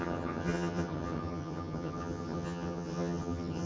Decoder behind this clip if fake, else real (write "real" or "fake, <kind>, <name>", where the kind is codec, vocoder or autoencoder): fake, vocoder, HiFi-GAN